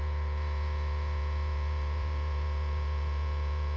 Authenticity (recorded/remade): remade